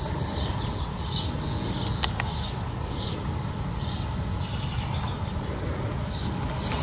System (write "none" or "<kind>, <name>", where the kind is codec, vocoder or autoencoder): none